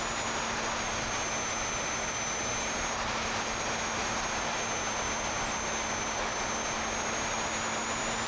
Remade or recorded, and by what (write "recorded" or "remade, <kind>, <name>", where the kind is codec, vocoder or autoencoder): recorded